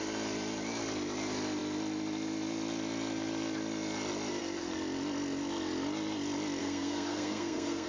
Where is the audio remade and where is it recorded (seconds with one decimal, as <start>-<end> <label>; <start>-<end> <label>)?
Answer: 0.0-6.6 recorded; 6.6-7.9 remade